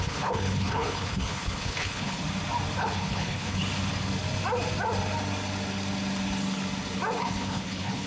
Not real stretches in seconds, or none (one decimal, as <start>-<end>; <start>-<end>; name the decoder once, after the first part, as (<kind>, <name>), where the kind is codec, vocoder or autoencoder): 0.0-2.2 (codec, HILCodec); 2.8-3.6; 7.2-8.1